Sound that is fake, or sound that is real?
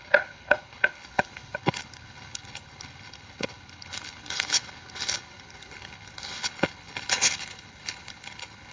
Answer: fake